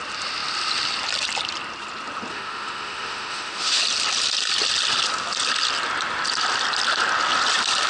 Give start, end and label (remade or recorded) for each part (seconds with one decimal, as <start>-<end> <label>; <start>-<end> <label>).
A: 0.0-2.3 recorded; 2.3-3.8 remade; 3.8-7.9 recorded